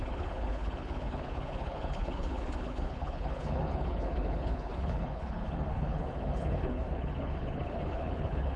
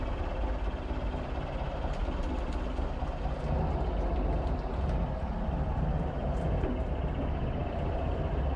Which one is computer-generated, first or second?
first